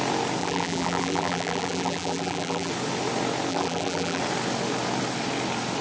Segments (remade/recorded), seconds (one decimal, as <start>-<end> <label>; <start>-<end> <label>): 0.0-0.4 recorded; 0.4-2.7 remade; 2.7-3.5 recorded; 3.5-4.2 remade; 4.2-5.8 recorded